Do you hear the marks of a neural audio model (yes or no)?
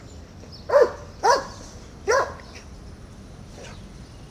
no